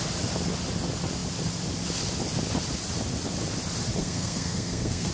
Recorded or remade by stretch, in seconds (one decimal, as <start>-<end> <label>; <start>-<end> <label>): 0.0-4.0 recorded; 4.0-5.1 remade